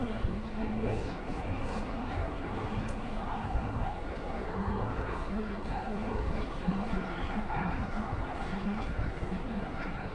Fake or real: fake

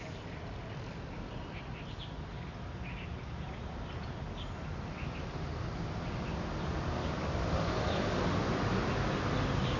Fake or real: real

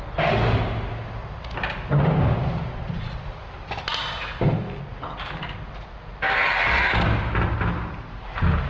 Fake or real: real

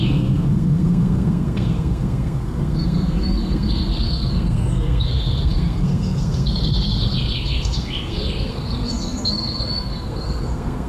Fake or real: fake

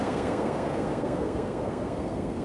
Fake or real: fake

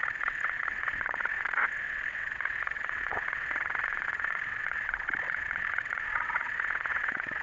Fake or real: fake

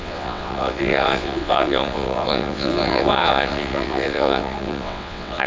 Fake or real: fake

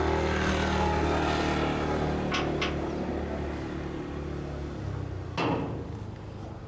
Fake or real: real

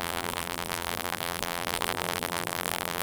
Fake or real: fake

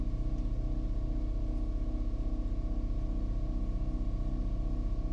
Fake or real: real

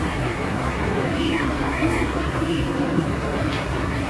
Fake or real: fake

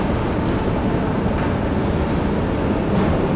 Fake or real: real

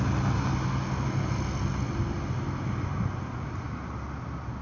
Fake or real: real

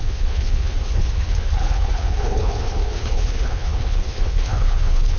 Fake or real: fake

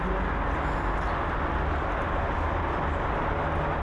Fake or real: real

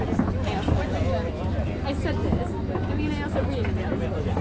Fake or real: real